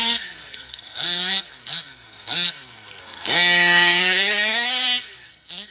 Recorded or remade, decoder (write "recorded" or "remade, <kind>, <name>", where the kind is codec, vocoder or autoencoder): remade, codec, SNAC